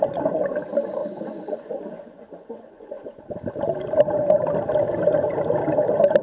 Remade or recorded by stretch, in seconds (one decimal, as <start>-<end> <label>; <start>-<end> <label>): 0.0-1.0 recorded; 1.0-3.2 remade; 3.2-6.2 recorded